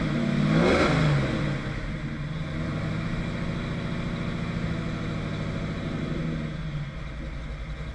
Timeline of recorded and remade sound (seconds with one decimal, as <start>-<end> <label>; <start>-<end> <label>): 0.0-7.9 recorded